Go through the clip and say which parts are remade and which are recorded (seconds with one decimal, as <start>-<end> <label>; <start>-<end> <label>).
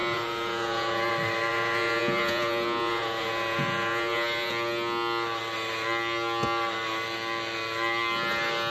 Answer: 0.0-1.1 remade; 1.1-1.5 recorded; 1.5-4.5 remade; 4.5-8.7 recorded